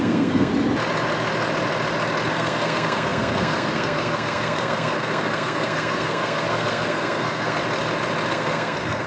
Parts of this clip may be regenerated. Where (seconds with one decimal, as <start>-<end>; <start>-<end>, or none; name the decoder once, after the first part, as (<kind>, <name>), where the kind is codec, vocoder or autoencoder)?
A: 0.0-0.5 (codec, SNAC); 2.3-7.6; 8.3-9.1